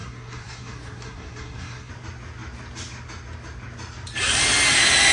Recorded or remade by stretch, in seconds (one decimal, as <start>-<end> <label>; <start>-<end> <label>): 0.0-1.9 remade; 1.9-5.1 recorded